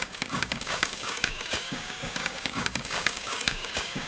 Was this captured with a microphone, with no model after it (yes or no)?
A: no